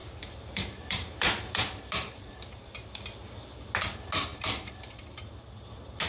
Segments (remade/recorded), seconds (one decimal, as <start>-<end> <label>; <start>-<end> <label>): 0.0-2.7 remade; 2.7-4.3 recorded; 4.3-5.2 remade; 5.2-6.1 recorded